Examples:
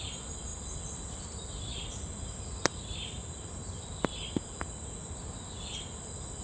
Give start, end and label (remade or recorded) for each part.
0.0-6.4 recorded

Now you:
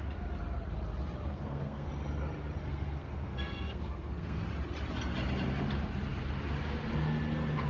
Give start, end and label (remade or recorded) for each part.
0.0-1.3 recorded; 1.3-1.9 remade; 1.9-2.7 recorded; 2.7-4.4 remade; 4.4-7.7 recorded

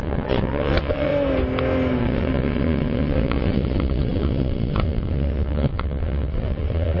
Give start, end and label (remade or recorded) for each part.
0.0-1.1 remade; 1.1-2.0 recorded; 2.0-7.0 remade

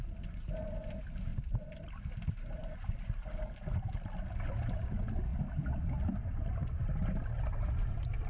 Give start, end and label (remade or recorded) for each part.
0.0-1.3 recorded; 1.3-1.9 remade; 1.9-5.3 recorded; 5.3-5.9 remade; 5.9-8.3 recorded

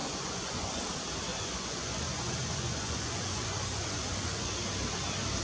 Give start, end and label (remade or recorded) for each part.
0.0-0.8 remade; 0.8-1.3 recorded; 1.3-4.5 remade; 4.5-5.4 recorded

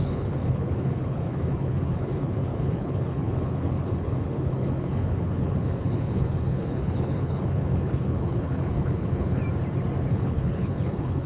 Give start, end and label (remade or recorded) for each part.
0.0-9.4 remade; 9.4-10.1 recorded; 10.1-11.3 remade

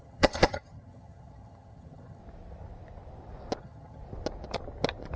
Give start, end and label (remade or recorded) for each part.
0.0-2.2 remade; 2.2-3.6 recorded; 3.6-4.0 remade; 4.0-5.2 recorded

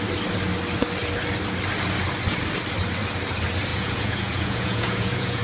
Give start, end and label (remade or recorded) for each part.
0.0-3.7 recorded; 3.7-5.4 remade